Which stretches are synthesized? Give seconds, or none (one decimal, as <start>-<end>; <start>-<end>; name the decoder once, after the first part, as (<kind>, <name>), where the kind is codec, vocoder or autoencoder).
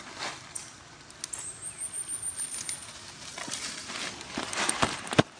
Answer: 4.5-5.4 (vocoder, BigVGAN v2)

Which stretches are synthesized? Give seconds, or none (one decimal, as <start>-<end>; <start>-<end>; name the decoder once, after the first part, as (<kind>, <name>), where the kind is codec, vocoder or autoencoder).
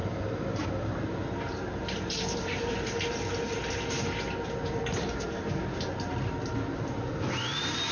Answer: 0.0-2.7 (vocoder, BigVGAN v2)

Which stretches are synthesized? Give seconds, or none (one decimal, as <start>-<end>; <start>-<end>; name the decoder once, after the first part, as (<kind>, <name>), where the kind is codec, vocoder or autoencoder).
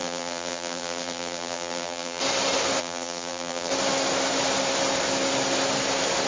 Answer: 0.0-2.2 (vocoder, BigVGAN v2); 2.8-3.7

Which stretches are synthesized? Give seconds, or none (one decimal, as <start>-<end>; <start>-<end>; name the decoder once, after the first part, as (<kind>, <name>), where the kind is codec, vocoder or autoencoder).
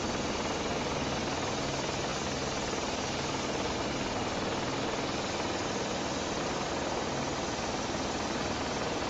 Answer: none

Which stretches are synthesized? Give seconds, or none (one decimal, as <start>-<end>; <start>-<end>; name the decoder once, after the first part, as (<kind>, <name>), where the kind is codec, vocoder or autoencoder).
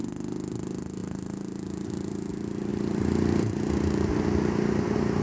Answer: 1.0-2.3 (vocoder, BigVGAN v2); 2.7-4.1